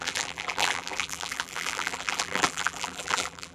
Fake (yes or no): yes